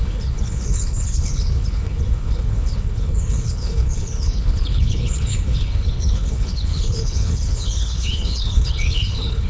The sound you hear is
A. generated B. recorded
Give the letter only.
A